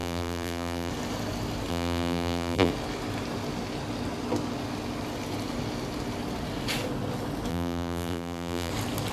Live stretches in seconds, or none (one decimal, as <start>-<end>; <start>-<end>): 0.9-1.7; 2.7-7.5; 8.7-9.1